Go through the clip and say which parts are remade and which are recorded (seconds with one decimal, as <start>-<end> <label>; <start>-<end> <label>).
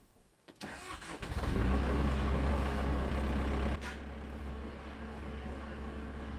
0.0-3.1 remade; 3.1-4.4 recorded; 4.4-6.4 remade